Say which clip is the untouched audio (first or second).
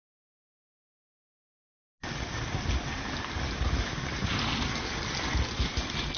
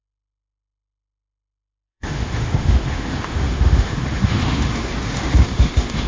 first